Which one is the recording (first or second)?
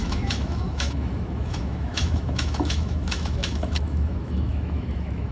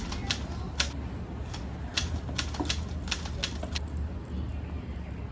second